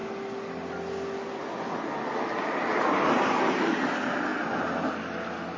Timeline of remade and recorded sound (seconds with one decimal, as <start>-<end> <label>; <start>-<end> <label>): 0.0-5.6 recorded